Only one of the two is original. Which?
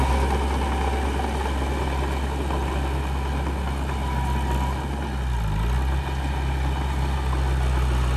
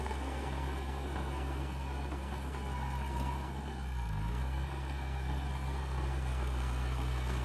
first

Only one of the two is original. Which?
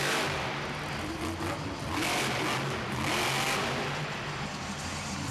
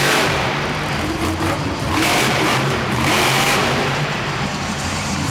first